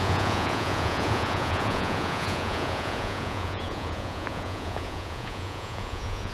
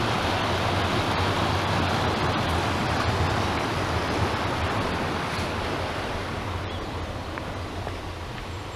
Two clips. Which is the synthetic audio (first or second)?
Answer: first